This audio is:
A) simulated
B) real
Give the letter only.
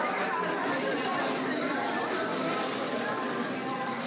B